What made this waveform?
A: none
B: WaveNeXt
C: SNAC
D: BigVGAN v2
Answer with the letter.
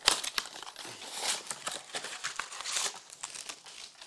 A